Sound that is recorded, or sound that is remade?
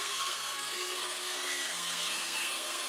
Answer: remade